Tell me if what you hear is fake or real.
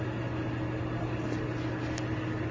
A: real